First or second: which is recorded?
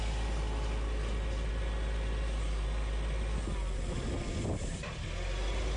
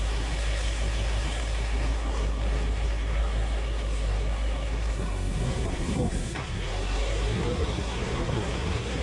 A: first